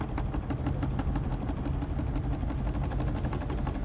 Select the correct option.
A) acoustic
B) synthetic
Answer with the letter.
A